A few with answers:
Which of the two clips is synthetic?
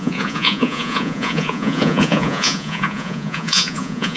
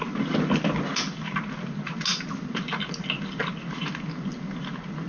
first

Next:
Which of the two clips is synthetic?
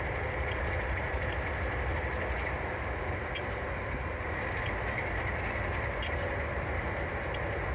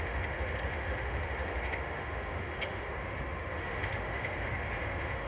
second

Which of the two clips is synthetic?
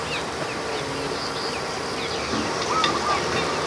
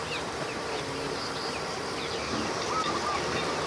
second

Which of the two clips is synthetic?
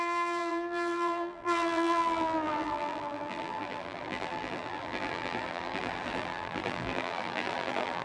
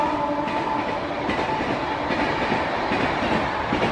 first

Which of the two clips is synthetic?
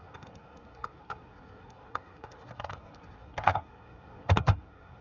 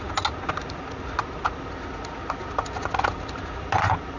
first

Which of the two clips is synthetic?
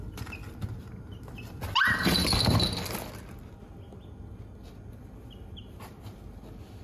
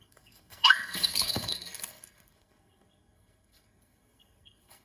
second